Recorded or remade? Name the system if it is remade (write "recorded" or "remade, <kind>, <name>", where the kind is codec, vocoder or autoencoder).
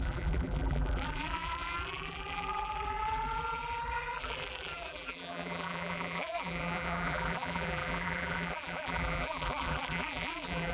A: remade, vocoder, BigVGAN v2